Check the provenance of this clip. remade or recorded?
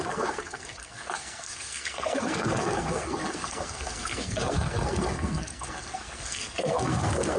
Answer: remade